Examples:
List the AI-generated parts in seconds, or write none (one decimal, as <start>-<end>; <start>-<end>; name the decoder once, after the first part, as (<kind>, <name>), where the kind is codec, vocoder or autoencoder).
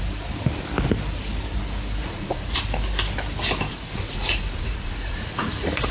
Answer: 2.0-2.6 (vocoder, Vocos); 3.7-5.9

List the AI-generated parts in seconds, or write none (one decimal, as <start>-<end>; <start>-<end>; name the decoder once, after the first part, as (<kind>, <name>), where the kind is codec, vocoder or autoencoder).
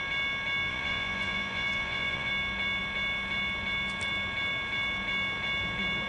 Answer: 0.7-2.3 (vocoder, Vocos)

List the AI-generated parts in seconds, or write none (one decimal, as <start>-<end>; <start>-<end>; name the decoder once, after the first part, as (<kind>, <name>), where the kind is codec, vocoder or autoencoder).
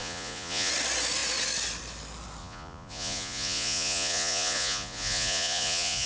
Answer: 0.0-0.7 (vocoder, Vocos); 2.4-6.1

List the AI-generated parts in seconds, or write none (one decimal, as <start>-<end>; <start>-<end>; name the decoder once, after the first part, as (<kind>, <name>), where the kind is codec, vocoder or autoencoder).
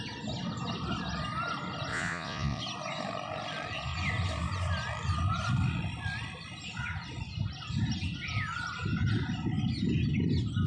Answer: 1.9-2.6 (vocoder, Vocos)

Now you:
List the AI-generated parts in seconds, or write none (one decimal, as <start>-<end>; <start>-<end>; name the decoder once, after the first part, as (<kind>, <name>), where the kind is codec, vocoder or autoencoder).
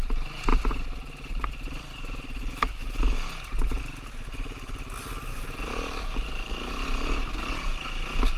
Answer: none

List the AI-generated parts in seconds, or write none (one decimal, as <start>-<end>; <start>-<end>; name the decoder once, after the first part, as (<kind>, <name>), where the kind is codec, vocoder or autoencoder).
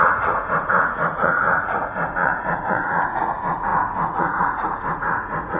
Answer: 0.0-5.6 (vocoder, Vocos)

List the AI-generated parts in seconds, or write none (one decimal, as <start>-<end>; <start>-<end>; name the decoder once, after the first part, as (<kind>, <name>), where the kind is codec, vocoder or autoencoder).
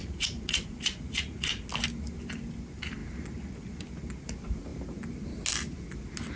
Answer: 0.0-1.7 (vocoder, Vocos)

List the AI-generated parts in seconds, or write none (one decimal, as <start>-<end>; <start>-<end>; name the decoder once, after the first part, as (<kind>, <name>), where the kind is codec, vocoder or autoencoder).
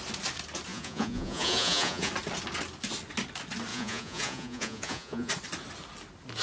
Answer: 0.7-2.1 (vocoder, Vocos); 3.7-5.3